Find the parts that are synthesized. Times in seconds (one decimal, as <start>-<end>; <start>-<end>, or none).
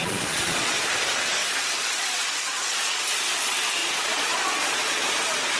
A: 0.0-0.9; 1.4-3.0; 3.8-5.0